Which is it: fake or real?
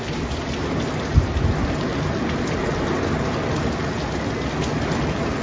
real